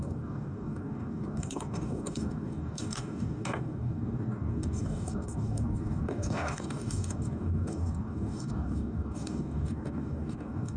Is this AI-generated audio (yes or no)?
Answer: yes